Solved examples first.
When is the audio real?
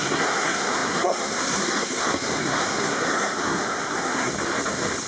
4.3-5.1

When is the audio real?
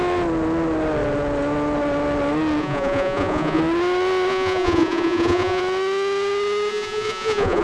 0.0-2.6; 3.6-4.3; 5.6-6.7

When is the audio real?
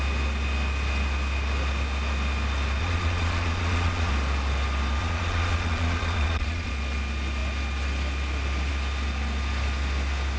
0.0-2.8; 4.1-5.0; 6.7-10.4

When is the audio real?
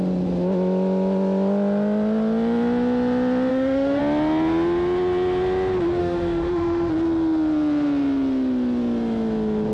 0.0-3.5; 4.0-6.0; 6.9-9.7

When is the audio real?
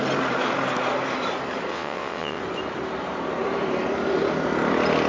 0.0-1.7; 2.4-5.1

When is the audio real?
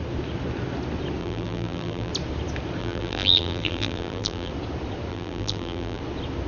0.0-1.2; 2.1-2.8; 4.5-5.1; 6.0-6.5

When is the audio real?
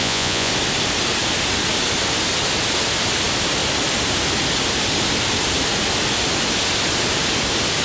0.5-7.8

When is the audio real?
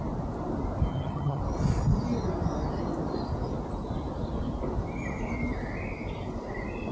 0.0-0.9; 1.4-6.9